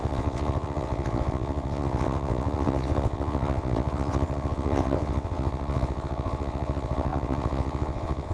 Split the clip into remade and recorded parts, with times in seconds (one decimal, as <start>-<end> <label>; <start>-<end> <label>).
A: 0.0-8.3 remade